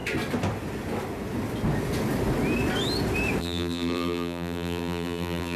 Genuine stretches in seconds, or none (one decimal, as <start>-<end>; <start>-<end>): 0.0-3.4